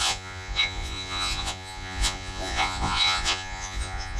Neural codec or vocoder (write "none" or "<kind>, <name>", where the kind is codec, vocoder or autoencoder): vocoder, Vocos